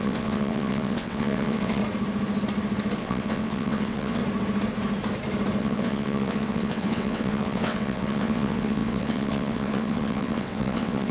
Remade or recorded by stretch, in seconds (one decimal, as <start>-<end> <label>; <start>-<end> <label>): 0.0-1.8 remade; 1.8-3.0 recorded; 3.0-4.2 remade; 4.2-5.6 recorded; 5.6-11.1 remade